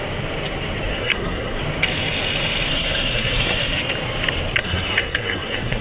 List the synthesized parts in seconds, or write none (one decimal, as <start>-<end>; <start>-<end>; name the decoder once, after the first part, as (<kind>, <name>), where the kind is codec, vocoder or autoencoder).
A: 0.9-1.6 (codec, SNAC); 2.7-3.8; 4.6-5.8